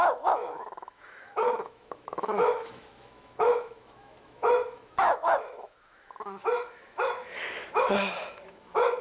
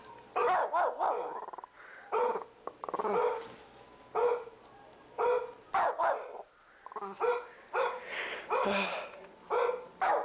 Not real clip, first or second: first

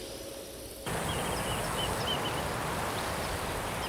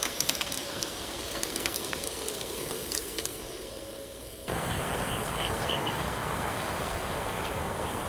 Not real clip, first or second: second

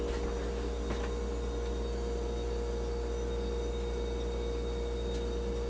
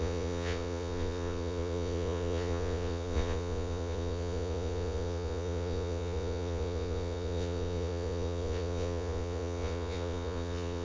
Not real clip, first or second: second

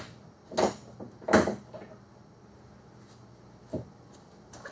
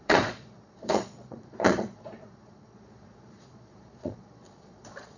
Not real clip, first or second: second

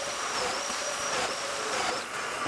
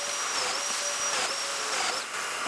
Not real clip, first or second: first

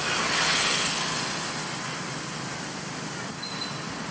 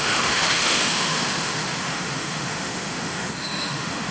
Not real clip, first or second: second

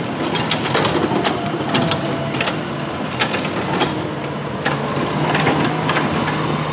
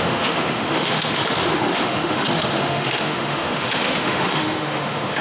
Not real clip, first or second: second